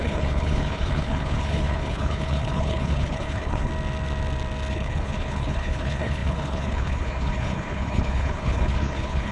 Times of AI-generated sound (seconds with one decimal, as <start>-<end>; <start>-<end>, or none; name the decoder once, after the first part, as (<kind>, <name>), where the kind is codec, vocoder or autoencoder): 0.0-3.7 (codec, HILCodec); 4.7-9.3